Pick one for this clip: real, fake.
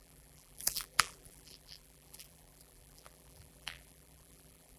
fake